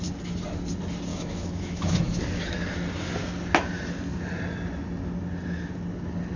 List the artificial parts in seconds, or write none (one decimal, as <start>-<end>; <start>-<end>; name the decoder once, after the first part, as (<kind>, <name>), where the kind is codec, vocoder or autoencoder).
1.1-2.2 (autoencoder, DAC-VAE)